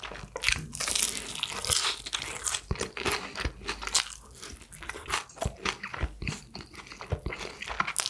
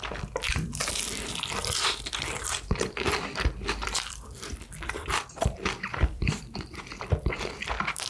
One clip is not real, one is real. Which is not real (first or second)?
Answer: second